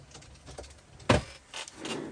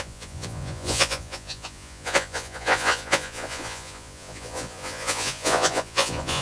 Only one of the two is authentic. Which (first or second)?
first